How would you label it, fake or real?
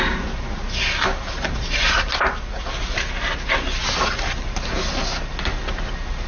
real